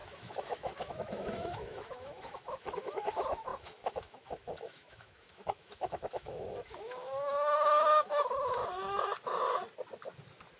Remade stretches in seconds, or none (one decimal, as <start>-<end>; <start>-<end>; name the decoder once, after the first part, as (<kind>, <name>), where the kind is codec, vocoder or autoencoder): 0.0-8.6 (autoencoder, DAC-VAE)